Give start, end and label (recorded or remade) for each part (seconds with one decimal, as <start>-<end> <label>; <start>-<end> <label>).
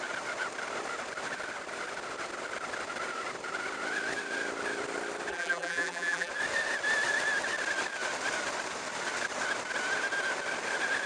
0.0-5.3 recorded; 5.3-6.3 remade; 6.3-11.1 recorded